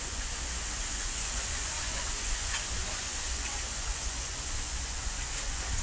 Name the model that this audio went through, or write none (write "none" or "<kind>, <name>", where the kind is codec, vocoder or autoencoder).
vocoder, Vocos